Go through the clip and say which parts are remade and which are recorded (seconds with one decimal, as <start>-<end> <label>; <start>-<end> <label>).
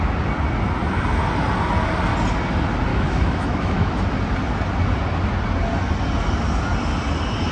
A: 0.0-2.9 recorded; 2.9-4.0 remade; 4.0-7.5 recorded